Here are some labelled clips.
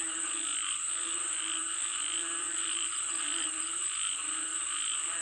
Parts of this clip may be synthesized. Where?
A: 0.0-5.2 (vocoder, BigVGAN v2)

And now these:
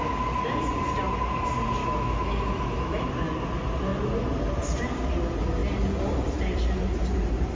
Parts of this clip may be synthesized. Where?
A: 1.8-3.1 (autoencoder, DAC-VAE)